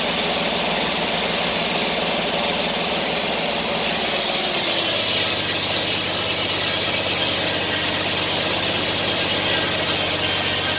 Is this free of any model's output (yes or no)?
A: yes